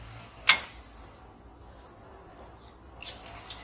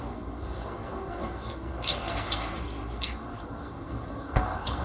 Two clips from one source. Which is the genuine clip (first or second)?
first